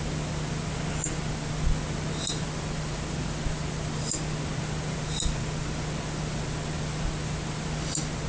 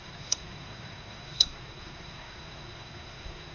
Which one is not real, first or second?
second